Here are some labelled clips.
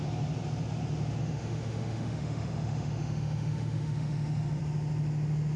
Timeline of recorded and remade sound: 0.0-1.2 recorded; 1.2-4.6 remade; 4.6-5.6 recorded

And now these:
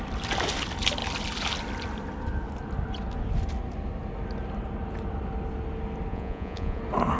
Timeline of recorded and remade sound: 0.0-6.1 recorded; 6.1-6.8 remade; 6.8-7.2 recorded

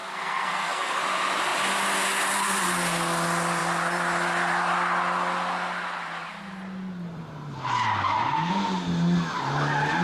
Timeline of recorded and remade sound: 0.0-1.0 remade; 1.0-10.0 recorded